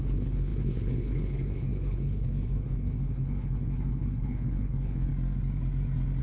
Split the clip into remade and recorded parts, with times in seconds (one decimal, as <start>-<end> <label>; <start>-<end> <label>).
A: 0.0-5.1 remade; 5.1-6.2 recorded